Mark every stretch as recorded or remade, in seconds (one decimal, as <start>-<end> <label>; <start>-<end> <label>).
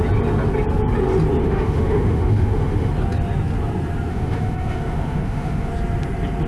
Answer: 0.0-1.4 recorded; 1.4-2.9 remade; 2.9-4.1 recorded; 4.1-5.7 remade; 5.7-6.5 recorded